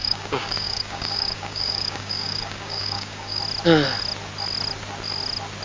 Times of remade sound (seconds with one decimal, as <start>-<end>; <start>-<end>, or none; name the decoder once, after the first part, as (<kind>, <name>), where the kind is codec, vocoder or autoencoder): 0.0-3.4 (codec, DAC)